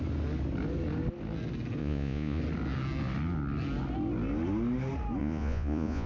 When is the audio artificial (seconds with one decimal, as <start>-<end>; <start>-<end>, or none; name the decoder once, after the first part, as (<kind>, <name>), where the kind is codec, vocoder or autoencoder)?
1.8-2.4 (vocoder, Vocos); 5.2-6.1